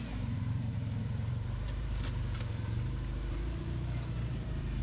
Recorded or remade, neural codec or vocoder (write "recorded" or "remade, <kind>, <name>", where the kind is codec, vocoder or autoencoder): remade, vocoder, BigVGAN v2